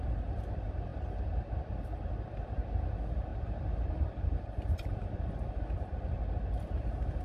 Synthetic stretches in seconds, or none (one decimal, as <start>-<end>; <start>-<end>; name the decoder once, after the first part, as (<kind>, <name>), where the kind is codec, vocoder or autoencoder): 3.3-3.9 (vocoder, BigVGAN v2)